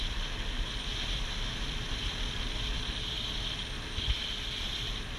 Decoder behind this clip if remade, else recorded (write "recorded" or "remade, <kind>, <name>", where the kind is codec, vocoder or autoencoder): recorded